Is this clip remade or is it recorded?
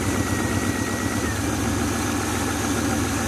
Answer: recorded